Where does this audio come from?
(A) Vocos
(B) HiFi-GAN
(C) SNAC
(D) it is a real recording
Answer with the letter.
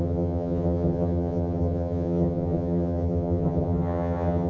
B